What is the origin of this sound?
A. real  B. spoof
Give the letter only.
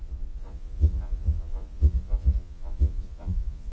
B